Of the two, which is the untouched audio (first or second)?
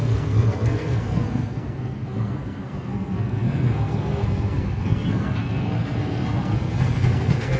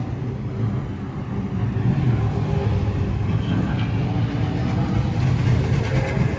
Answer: second